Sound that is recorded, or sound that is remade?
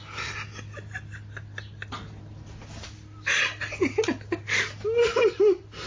recorded